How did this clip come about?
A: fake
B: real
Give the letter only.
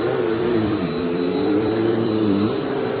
A